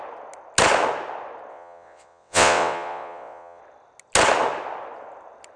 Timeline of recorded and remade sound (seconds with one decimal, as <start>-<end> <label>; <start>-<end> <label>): 0.0-1.5 recorded; 1.5-3.6 remade; 3.6-5.6 recorded